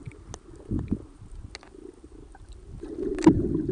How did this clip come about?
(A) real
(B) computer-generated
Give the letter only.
A